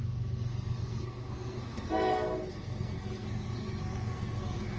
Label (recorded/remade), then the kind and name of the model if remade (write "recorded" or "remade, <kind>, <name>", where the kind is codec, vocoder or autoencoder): remade, codec, SNAC